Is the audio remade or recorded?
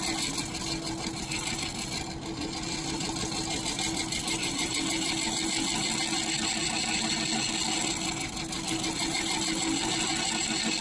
recorded